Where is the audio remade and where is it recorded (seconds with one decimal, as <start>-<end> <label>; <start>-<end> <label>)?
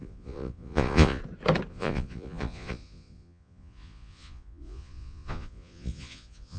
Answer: 0.0-1.2 remade; 1.2-1.7 recorded; 1.7-6.6 remade